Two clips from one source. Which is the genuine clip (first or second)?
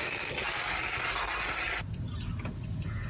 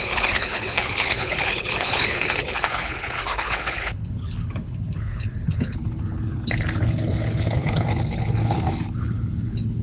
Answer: first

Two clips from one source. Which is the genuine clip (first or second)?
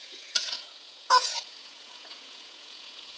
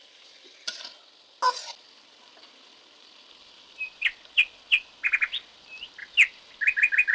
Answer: second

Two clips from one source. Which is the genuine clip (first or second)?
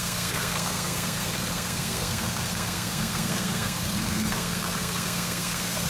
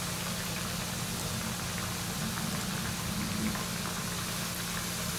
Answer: second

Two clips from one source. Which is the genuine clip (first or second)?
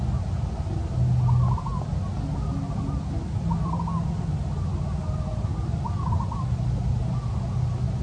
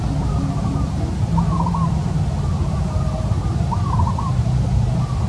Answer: first